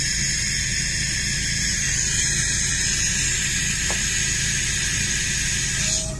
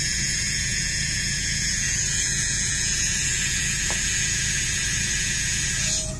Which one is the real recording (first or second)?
first